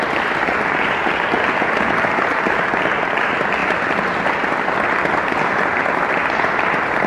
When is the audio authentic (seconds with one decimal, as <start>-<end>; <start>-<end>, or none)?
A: 0.0-7.1